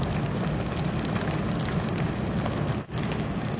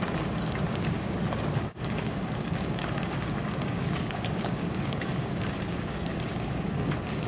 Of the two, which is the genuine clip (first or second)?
first